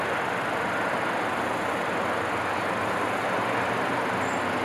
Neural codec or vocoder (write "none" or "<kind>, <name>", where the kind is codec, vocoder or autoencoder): none